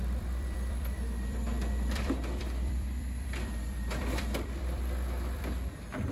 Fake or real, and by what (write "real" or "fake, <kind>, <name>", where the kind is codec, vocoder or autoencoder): fake, vocoder, BigVGAN v2